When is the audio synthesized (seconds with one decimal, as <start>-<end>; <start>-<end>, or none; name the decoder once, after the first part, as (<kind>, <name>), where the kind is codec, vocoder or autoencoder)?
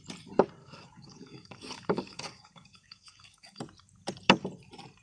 0.6-3.6 (codec, DAC)